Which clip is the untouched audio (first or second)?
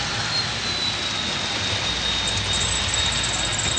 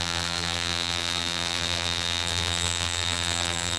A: first